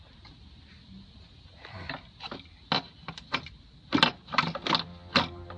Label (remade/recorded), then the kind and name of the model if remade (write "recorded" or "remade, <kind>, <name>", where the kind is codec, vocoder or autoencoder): recorded